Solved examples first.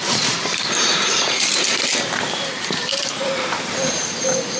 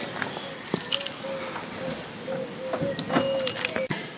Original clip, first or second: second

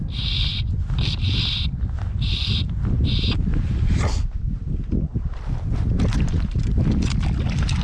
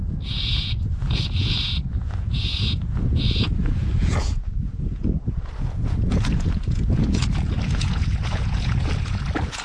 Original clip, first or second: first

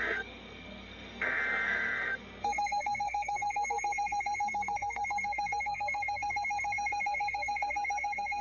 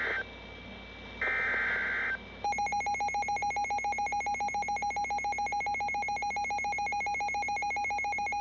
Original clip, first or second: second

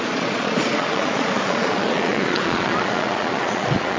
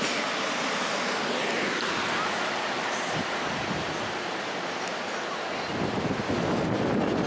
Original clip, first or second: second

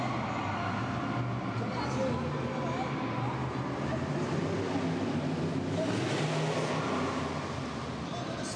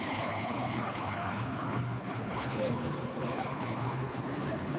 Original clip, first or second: first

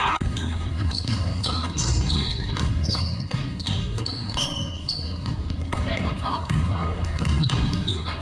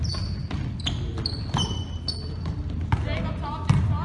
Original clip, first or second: second